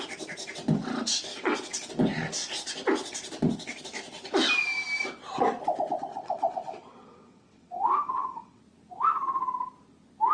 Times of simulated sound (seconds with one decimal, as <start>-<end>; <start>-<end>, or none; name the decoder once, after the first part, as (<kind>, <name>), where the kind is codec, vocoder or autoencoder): 1.3-1.9 (vocoder, WaveNeXt); 6.1-8.6